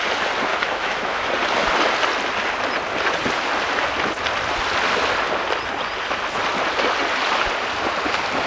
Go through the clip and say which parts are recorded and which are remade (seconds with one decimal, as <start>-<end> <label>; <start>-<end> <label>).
0.0-0.5 recorded; 0.5-1.3 remade; 1.3-8.5 recorded